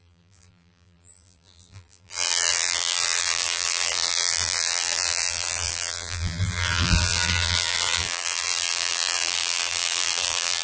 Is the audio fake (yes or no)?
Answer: yes